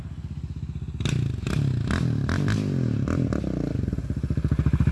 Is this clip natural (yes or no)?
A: yes